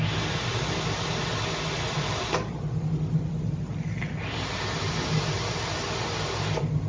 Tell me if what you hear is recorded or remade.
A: recorded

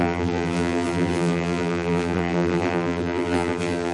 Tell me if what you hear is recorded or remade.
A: remade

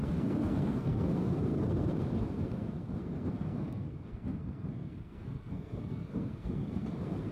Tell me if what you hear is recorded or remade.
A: remade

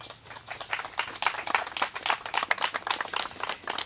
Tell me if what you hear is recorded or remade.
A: recorded